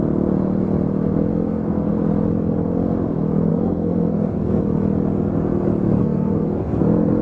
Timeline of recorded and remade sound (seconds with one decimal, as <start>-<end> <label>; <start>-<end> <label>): 0.0-1.3 recorded; 1.3-1.9 remade; 1.9-3.5 recorded; 3.5-4.6 remade; 4.6-6.0 recorded; 6.0-7.2 remade

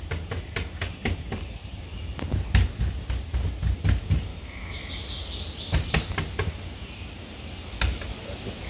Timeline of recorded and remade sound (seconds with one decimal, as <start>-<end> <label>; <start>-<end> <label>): 0.0-4.3 recorded; 4.3-4.9 remade; 4.9-8.7 recorded

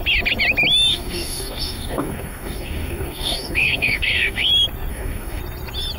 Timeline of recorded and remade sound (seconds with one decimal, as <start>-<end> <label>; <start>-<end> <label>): 0.0-0.9 recorded; 0.9-4.5 remade; 4.5-4.9 recorded; 4.9-5.4 remade; 5.4-6.0 recorded

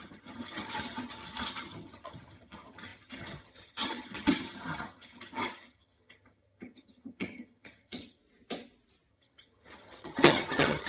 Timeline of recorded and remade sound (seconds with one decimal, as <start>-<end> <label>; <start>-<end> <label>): 0.0-8.2 remade; 8.2-9.1 recorded; 9.1-10.9 remade

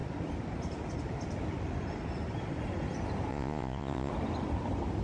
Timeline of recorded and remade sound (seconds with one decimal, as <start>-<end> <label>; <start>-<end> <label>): 0.0-3.3 recorded; 3.3-4.1 remade; 4.1-5.0 recorded

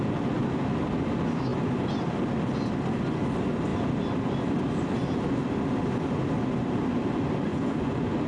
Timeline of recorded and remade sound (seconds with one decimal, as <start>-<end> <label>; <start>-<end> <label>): 0.0-7.5 recorded; 7.5-8.3 remade